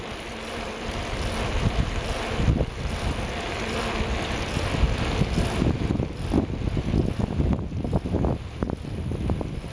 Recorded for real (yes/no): yes